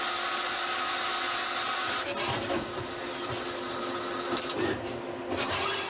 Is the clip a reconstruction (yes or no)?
no